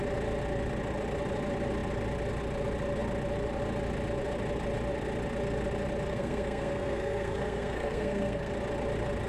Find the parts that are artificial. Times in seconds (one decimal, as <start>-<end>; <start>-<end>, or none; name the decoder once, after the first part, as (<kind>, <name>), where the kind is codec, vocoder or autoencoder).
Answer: 6.1-8.5 (codec, SNAC)